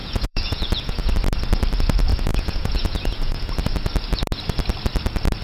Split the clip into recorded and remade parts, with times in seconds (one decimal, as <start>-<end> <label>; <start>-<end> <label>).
0.0-1.1 remade; 1.1-2.1 recorded; 2.1-3.6 remade; 3.6-5.4 recorded